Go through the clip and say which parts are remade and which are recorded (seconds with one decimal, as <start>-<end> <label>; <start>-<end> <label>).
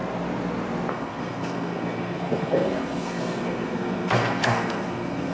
0.0-0.9 recorded; 0.9-5.3 remade